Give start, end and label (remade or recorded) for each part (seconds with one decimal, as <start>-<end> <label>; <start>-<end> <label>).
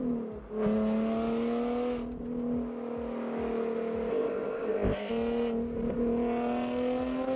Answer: 0.0-4.1 recorded; 4.1-5.1 remade; 5.1-7.4 recorded